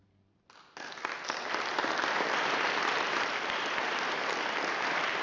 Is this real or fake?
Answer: real